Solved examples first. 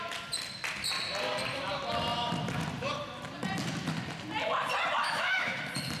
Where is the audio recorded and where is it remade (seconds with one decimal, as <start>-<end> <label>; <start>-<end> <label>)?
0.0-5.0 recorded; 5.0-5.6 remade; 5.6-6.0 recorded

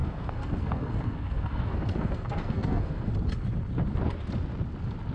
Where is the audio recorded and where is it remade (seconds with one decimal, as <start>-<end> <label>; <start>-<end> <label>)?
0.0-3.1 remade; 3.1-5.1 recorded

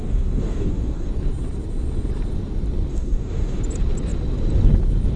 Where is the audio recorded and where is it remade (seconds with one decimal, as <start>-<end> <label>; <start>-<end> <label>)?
0.0-1.1 remade; 1.1-2.9 recorded; 2.9-3.6 remade; 3.6-5.2 recorded